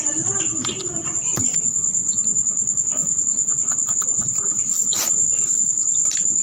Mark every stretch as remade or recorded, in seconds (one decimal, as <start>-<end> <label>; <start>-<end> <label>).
0.0-6.4 recorded

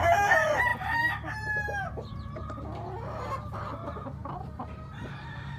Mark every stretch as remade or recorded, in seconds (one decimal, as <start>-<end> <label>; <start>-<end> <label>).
0.0-5.6 recorded

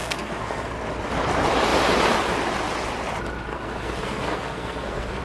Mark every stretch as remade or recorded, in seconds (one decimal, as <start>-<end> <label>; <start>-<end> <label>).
0.0-0.7 remade; 0.7-3.5 recorded; 3.5-5.2 remade

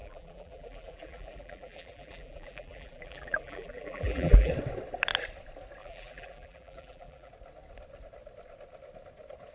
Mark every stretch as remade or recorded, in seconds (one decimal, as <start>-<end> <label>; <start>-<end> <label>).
0.0-4.5 remade; 4.5-5.8 recorded; 5.8-7.3 remade; 7.3-9.5 recorded

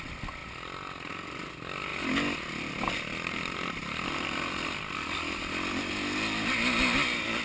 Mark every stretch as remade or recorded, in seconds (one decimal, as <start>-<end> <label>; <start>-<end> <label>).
0.0-7.4 recorded

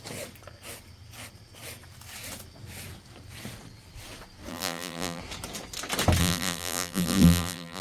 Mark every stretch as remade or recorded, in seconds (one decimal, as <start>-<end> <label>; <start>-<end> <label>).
0.0-4.5 recorded; 4.5-5.2 remade; 5.2-6.2 recorded; 6.2-7.8 remade

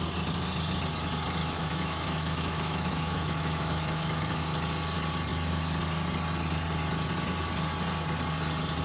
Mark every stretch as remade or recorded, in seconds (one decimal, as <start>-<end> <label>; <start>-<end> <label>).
0.0-1.4 recorded; 1.4-4.2 remade; 4.2-8.8 recorded

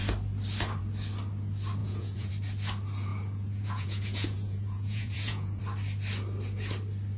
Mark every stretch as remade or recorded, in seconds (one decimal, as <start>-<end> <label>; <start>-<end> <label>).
0.0-1.8 recorded; 1.8-2.3 remade; 2.3-3.1 recorded; 3.1-5.6 remade; 5.6-7.2 recorded